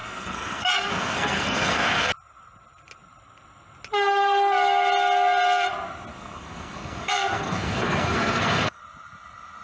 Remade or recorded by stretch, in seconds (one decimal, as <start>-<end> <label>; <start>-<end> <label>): 0.0-2.1 remade; 2.1-6.1 recorded; 6.1-8.8 remade; 8.8-9.6 recorded